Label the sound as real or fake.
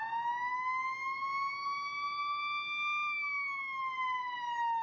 real